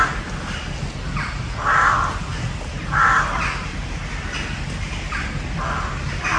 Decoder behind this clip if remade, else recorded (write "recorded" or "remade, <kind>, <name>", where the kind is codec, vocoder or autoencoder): recorded